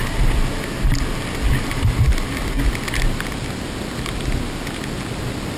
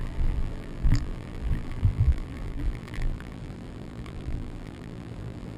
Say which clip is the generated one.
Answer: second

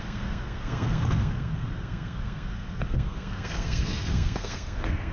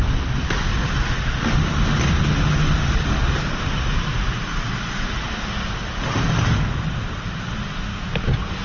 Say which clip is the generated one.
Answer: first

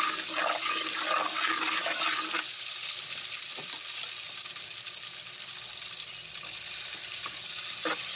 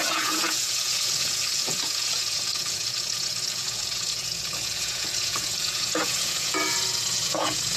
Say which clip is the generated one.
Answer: second